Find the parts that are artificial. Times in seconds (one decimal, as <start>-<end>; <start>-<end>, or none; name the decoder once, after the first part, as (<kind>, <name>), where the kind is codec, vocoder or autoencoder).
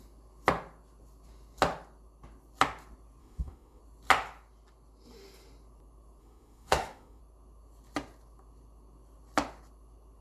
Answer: 3.2-3.8 (autoencoder, DAC-VAE); 6.2-7.2